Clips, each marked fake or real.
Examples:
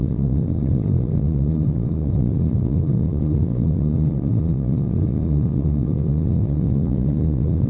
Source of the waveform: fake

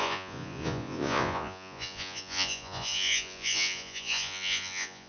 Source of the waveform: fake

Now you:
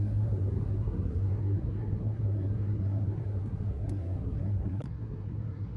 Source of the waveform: fake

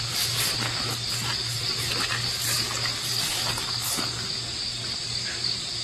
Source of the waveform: real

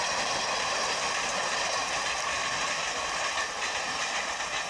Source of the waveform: real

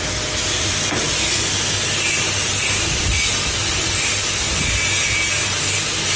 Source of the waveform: real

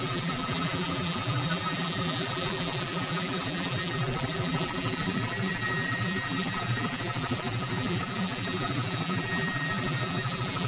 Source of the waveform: fake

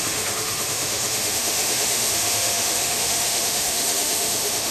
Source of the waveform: fake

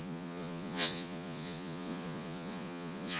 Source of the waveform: fake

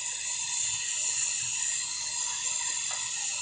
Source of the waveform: real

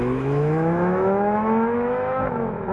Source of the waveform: fake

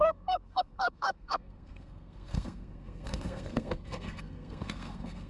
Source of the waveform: fake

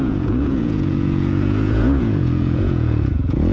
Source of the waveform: fake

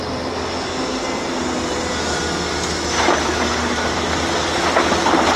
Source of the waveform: real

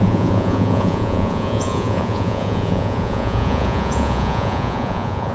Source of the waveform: fake